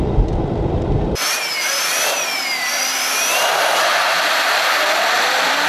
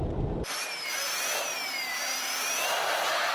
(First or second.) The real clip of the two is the second